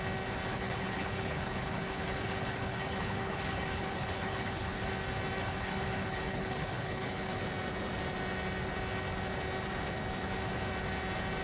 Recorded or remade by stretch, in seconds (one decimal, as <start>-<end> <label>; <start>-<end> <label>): 0.0-0.5 recorded; 0.5-4.9 remade; 4.9-5.4 recorded; 5.4-7.4 remade; 7.4-11.4 recorded

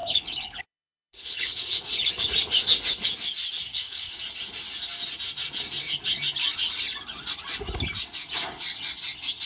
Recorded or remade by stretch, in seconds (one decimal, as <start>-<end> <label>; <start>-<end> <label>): 0.0-2.1 remade; 2.1-3.7 recorded; 3.7-4.2 remade; 4.2-9.5 recorded